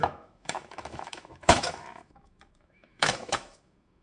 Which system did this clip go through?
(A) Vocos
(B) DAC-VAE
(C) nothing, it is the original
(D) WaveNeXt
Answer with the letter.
B